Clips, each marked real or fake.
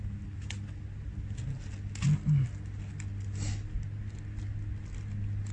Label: real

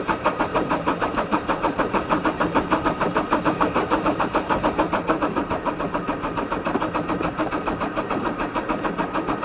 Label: fake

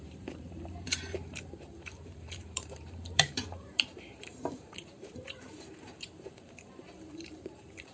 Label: fake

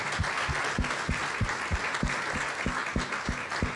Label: real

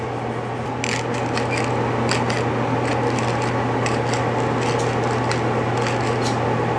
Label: real